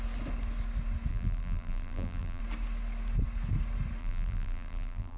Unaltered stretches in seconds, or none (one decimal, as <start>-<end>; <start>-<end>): 0.0-1.1; 2.4-4.0